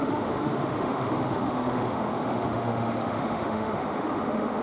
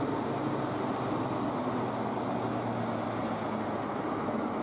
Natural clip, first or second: second